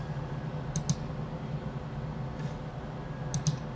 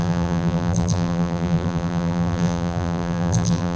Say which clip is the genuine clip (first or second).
first